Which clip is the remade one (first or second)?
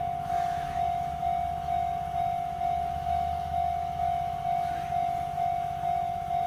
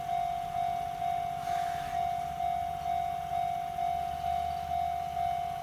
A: first